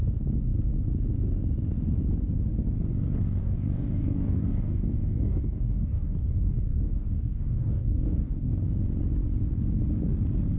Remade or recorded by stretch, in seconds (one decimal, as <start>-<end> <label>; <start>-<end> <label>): 0.0-3.4 recorded; 3.4-8.5 remade; 8.5-10.6 recorded

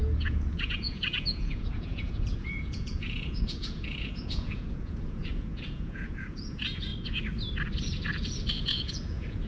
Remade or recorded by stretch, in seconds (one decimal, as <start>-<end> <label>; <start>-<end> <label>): 0.0-6.9 remade; 6.9-8.5 recorded; 8.5-9.5 remade

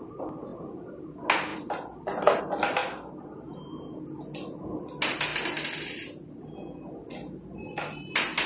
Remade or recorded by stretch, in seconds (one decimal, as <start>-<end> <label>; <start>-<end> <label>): 0.0-8.5 recorded

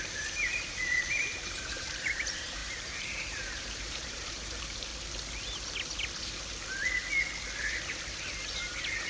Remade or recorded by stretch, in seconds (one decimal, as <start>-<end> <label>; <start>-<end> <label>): 0.0-4.9 remade; 4.9-8.5 recorded; 8.5-9.1 remade

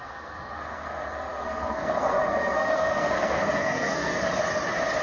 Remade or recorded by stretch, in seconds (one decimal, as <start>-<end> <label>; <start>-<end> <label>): 0.0-4.1 remade; 4.1-5.0 recorded

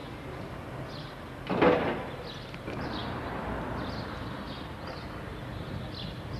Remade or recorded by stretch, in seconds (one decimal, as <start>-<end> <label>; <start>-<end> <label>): 0.0-6.4 recorded

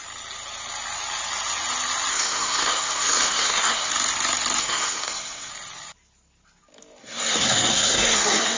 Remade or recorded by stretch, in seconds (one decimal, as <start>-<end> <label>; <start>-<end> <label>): 0.0-2.1 recorded; 2.1-3.9 remade; 3.9-4.6 recorded; 4.6-5.5 remade; 5.5-7.0 recorded; 7.0-8.6 remade

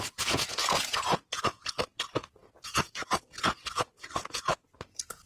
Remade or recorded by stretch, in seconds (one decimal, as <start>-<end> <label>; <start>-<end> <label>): 0.0-5.3 remade